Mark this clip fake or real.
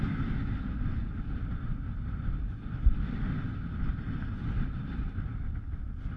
real